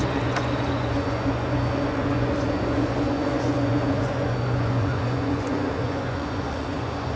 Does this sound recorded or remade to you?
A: remade